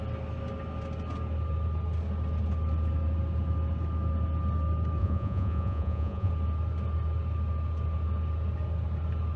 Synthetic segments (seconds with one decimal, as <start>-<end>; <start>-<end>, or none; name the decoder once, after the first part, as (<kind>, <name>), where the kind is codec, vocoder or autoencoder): 5.0-6.3 (vocoder, Vocos)